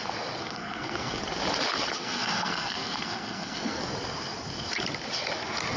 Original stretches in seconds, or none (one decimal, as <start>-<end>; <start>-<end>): 0.0-0.4; 1.2-2.0; 3.8-5.8